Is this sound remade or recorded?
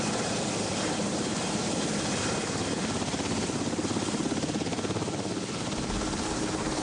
recorded